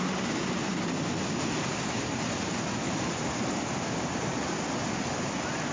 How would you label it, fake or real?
fake